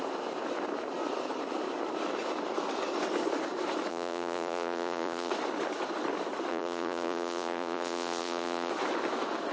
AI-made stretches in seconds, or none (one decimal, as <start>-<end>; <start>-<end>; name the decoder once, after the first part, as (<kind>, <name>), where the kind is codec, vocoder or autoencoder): 3.9-5.3 (vocoder, Vocos); 6.5-8.7